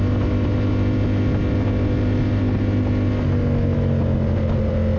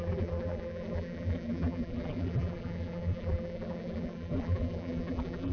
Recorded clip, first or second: first